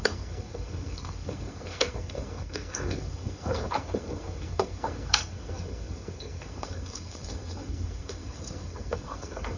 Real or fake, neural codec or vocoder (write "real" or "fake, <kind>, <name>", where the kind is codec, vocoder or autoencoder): fake, codec, SNAC